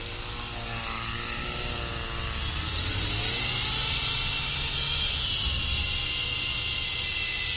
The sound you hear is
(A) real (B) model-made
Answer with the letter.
A